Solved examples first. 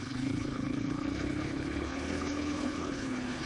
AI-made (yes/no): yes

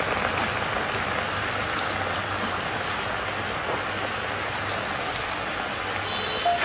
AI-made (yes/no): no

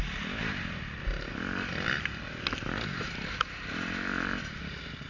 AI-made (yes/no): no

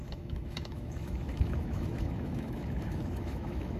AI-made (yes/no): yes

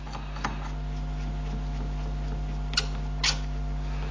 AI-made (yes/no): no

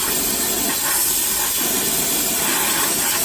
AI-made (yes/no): no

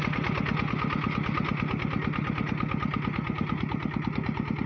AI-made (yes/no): no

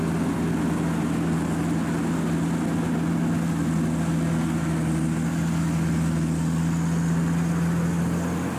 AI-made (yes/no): no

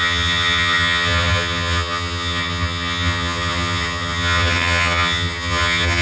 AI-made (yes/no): yes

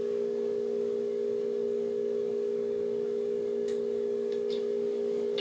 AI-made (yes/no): yes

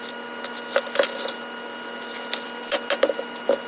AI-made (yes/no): no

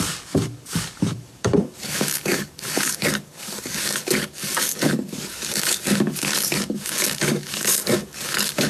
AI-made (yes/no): yes